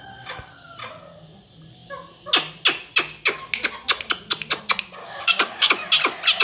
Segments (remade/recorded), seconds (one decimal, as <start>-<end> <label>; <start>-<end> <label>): 0.0-5.0 recorded; 5.0-5.7 remade; 5.7-6.4 recorded